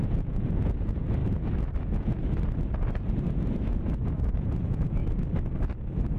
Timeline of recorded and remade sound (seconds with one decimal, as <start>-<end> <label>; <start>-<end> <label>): 0.0-1.2 remade; 1.2-1.8 recorded; 1.8-2.2 remade; 2.2-4.1 recorded; 4.1-5.0 remade; 5.0-6.2 recorded